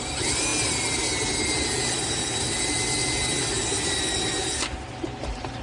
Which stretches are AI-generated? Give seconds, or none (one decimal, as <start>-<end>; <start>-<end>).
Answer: none